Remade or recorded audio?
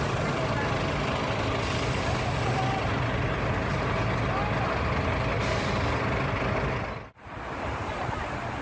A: recorded